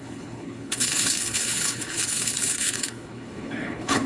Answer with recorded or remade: remade